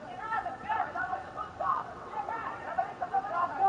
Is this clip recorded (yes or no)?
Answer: no